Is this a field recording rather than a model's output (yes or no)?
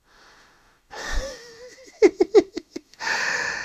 no